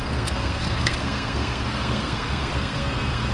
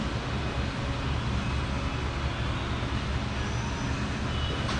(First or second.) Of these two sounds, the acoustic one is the second